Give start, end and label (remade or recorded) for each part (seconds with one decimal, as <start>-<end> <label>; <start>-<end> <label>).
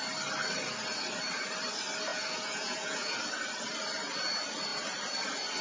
0.0-2.1 recorded; 2.1-3.2 remade; 3.2-5.6 recorded